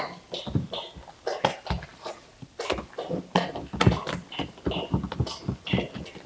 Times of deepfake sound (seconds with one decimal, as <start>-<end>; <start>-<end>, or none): none